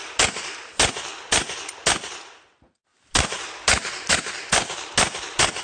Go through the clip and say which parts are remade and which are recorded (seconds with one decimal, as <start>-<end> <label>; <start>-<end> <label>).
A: 0.0-0.7 remade; 0.7-2.9 recorded; 2.9-4.1 remade; 4.1-5.6 recorded